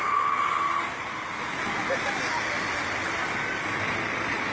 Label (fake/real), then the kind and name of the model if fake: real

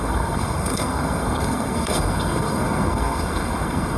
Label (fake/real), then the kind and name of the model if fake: fake, codec, SNAC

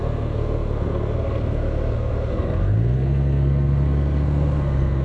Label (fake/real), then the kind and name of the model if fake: fake, codec, SNAC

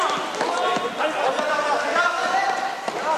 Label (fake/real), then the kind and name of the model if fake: real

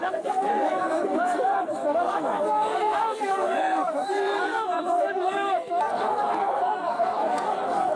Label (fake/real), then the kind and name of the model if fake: fake, codec, SNAC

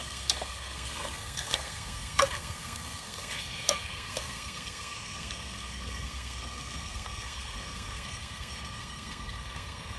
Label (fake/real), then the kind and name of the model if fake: fake, codec, SNAC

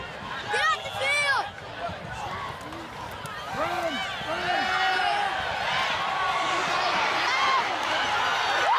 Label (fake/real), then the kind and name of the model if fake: real